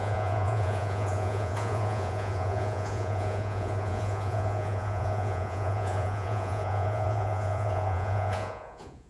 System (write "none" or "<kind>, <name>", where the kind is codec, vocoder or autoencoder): vocoder, Vocos